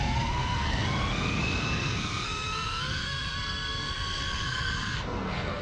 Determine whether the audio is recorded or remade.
remade